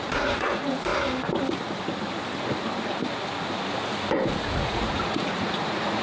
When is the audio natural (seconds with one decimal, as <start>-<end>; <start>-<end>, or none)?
0.9-4.5